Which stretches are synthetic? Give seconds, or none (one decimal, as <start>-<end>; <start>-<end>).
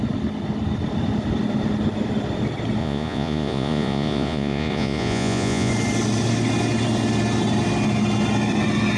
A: 2.8-5.7